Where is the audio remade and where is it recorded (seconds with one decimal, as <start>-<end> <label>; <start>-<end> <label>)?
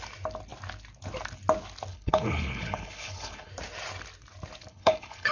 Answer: 0.0-1.9 recorded; 1.9-3.5 remade; 3.5-4.7 recorded; 4.7-5.3 remade